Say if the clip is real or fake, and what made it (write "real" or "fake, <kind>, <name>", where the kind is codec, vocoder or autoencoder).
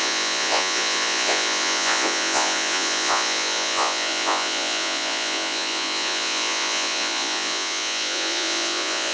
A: fake, vocoder, Vocos